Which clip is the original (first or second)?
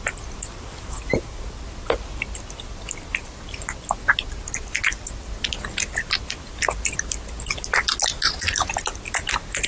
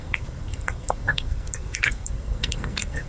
first